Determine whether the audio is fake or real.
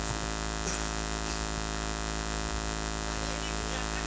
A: real